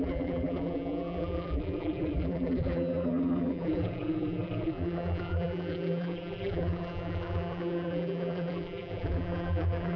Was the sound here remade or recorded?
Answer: remade